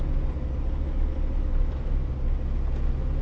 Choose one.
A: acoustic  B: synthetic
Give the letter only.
A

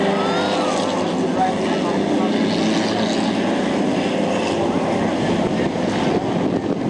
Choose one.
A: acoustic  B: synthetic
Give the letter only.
A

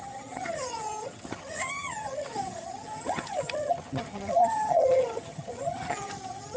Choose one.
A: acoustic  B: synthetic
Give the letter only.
B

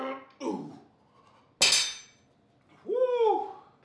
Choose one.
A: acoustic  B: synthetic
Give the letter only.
A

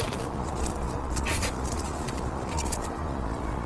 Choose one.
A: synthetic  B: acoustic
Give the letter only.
A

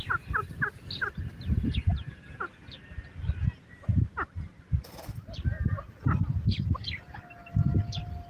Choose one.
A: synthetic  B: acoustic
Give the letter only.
B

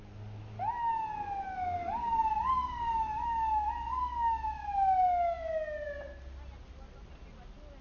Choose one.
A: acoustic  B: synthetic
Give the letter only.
A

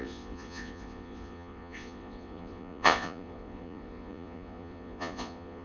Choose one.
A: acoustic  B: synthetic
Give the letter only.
B